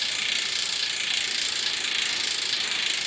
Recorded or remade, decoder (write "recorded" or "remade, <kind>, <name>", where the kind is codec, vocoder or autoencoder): recorded